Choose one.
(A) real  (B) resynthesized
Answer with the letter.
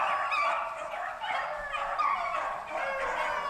A